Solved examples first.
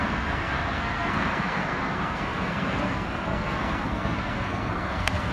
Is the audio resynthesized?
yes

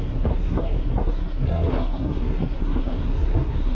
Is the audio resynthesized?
yes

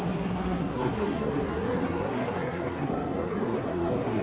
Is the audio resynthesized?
yes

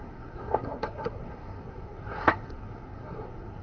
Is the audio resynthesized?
yes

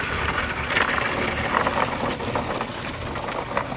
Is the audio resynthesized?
no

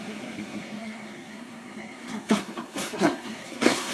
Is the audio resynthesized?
yes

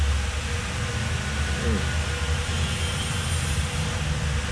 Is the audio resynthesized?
no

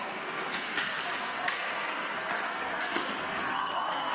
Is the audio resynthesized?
yes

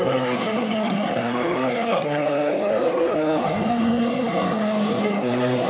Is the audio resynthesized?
yes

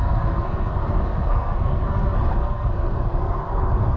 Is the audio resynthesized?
yes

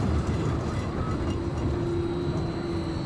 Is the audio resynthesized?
no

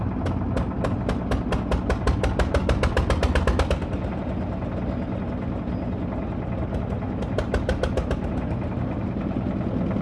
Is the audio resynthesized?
no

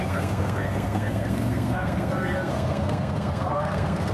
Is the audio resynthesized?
yes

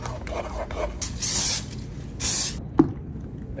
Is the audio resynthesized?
no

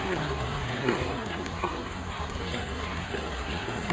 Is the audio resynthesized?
yes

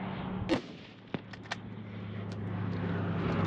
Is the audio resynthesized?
no